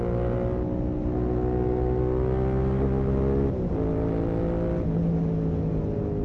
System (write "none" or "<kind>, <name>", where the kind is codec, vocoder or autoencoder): none